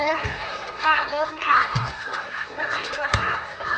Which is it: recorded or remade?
remade